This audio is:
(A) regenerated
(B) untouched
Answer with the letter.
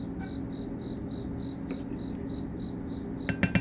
B